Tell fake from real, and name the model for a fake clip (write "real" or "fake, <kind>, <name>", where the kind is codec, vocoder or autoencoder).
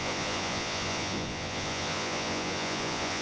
fake, vocoder, Vocos